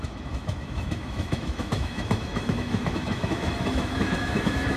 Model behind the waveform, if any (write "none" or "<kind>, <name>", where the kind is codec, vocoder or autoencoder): autoencoder, DAC-VAE